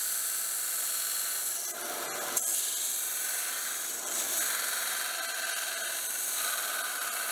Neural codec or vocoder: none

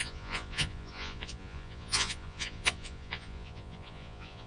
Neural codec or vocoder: vocoder, Vocos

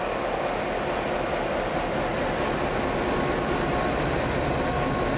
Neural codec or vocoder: none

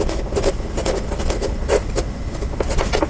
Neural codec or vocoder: none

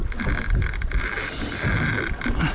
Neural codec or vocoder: none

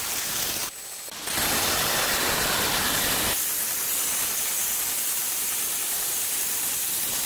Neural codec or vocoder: none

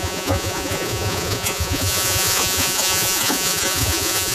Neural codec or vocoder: vocoder, Vocos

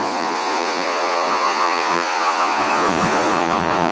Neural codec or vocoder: vocoder, Vocos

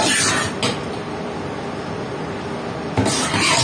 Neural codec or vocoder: none